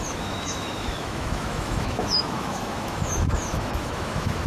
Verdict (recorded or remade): remade